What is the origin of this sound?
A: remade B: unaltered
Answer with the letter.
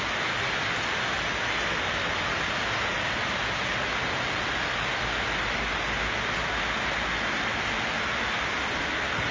B